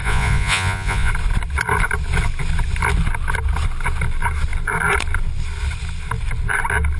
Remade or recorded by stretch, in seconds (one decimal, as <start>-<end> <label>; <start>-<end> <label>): 0.0-1.1 remade; 1.1-7.0 recorded